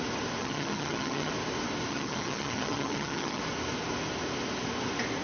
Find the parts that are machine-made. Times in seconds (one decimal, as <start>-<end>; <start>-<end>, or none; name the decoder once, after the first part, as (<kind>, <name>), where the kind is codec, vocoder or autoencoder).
0.4-1.3 (vocoder, HiFi-GAN); 1.9-3.4